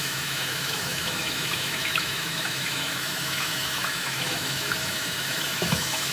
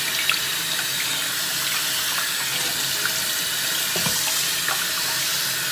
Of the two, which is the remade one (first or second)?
first